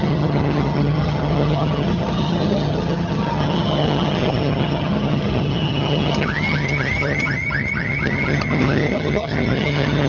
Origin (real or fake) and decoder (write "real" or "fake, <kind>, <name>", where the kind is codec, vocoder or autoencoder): fake, vocoder, HiFi-GAN